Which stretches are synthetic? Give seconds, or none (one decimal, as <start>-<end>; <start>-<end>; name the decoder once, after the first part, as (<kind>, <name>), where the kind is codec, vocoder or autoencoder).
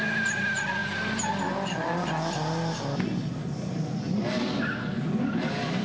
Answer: none